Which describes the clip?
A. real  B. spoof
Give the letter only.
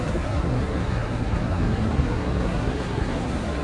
B